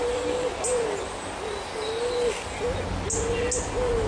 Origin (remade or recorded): recorded